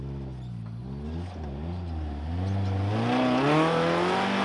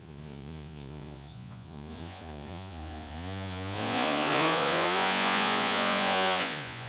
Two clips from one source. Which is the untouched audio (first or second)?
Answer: first